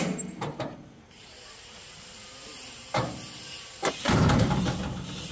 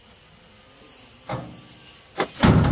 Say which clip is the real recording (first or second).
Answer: second